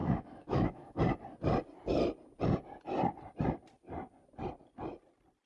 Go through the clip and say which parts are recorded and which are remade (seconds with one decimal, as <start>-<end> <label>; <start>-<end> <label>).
0.0-1.0 remade; 1.0-5.5 recorded